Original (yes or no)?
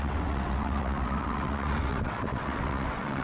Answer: no